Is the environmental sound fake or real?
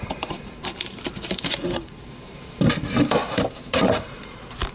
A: fake